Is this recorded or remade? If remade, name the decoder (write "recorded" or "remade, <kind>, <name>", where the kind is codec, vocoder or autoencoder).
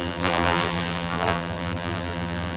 remade, vocoder, BigVGAN v2